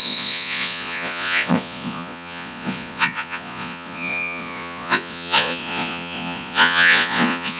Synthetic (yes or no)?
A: yes